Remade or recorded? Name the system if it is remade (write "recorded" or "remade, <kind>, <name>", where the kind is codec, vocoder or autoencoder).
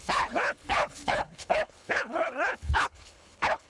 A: remade, codec, HILCodec